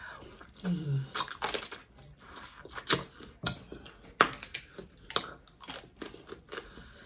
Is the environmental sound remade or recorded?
recorded